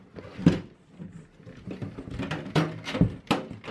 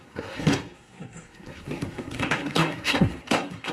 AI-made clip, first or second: second